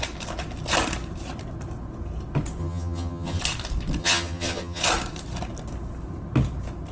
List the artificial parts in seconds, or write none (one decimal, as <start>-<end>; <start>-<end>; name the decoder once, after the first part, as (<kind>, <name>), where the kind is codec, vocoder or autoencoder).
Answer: 2.6-3.4 (vocoder, HiFi-GAN); 4.0-4.8